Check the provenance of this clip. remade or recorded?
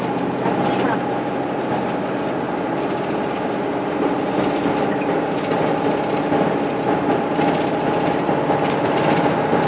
recorded